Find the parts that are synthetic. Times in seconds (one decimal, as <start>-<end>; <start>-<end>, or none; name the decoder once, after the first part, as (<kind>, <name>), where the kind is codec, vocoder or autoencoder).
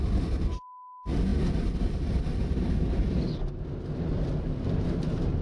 none